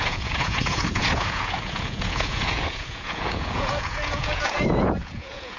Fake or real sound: fake